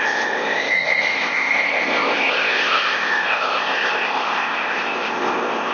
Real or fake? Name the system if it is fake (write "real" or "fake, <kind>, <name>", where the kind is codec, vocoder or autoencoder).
fake, codec, ZipCodec